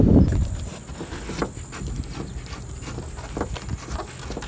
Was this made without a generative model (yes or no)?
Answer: yes